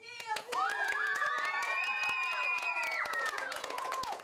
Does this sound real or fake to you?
fake